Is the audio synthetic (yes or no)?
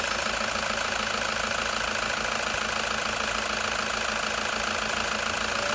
no